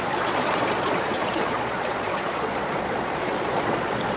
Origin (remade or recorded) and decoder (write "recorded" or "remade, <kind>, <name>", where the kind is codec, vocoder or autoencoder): remade, vocoder, Vocos